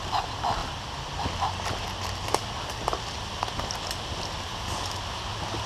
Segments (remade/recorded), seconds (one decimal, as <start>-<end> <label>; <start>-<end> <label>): 0.0-5.7 recorded

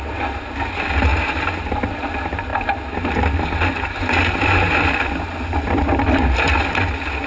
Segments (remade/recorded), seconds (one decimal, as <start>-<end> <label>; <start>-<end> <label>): 0.0-7.3 recorded

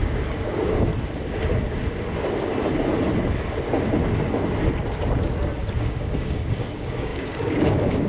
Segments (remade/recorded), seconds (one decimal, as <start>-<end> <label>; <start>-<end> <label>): 0.0-0.9 remade; 0.9-5.8 recorded; 5.8-8.1 remade

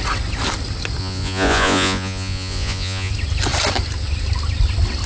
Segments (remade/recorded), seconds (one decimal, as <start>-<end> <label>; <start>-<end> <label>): 0.0-1.0 recorded; 1.0-3.1 remade; 3.1-5.1 recorded

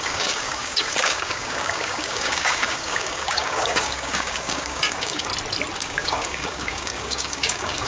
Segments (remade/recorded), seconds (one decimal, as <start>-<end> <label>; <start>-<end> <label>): 0.0-5.3 remade; 5.3-5.8 recorded; 5.8-7.9 remade

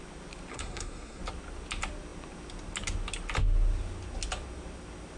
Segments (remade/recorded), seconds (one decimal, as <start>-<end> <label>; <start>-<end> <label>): 0.0-0.5 recorded; 0.5-1.2 remade; 1.2-5.2 recorded